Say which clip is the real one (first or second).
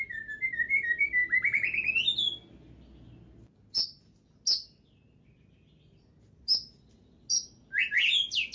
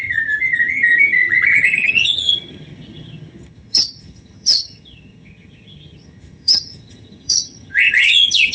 first